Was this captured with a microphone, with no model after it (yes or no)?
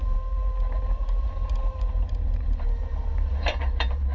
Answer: no